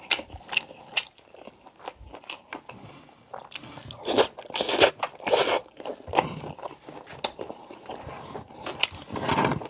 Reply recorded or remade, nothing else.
recorded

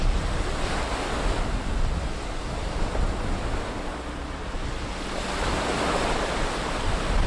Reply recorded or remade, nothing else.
recorded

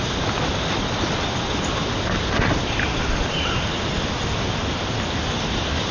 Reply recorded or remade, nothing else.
recorded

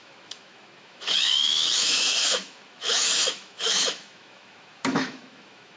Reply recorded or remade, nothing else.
remade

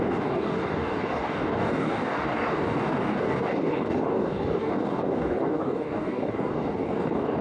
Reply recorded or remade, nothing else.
remade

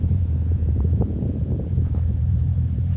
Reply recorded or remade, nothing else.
remade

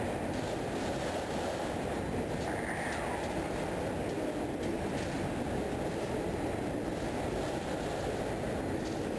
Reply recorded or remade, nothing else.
recorded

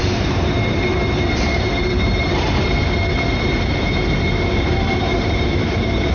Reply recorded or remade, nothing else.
remade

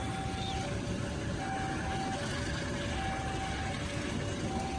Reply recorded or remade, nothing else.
recorded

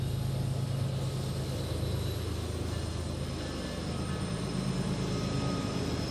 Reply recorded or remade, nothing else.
recorded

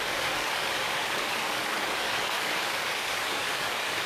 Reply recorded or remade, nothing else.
remade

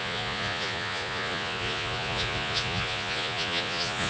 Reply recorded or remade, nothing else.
remade